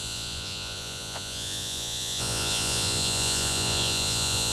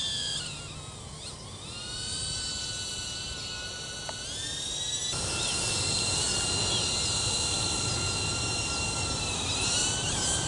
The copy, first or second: first